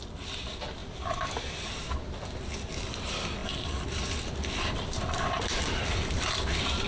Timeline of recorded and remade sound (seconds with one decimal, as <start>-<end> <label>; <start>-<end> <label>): 0.0-0.8 recorded; 0.8-1.4 remade; 1.4-3.4 recorded; 3.4-6.3 remade; 6.3-6.9 recorded